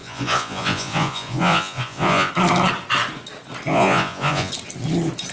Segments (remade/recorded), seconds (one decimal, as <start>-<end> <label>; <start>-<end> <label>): 0.0-2.3 remade; 2.3-3.7 recorded; 3.7-4.5 remade; 4.5-5.3 recorded